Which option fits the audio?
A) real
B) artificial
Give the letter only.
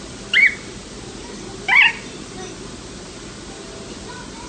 A